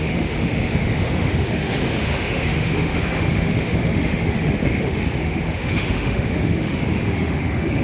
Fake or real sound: fake